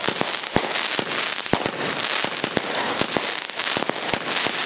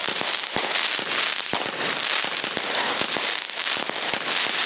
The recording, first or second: first